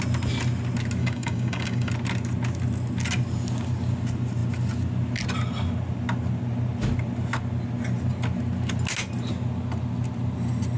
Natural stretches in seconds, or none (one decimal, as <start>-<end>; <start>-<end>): 0.0-1.0; 1.9-10.8